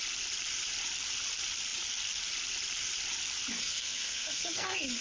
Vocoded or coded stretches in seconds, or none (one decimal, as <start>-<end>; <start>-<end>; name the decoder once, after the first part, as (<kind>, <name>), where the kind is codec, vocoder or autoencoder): 3.6-5.0 (codec, SNAC)